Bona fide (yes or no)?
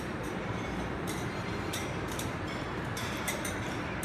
no